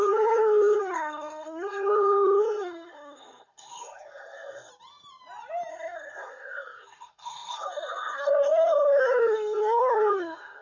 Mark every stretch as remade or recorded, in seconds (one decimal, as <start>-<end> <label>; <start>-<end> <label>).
0.0-4.7 remade; 4.7-5.7 recorded; 5.7-10.6 remade